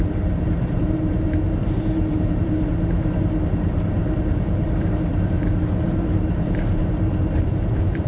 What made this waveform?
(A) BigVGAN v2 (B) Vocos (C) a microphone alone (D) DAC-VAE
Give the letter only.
A